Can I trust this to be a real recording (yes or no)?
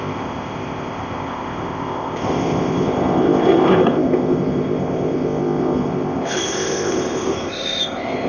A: no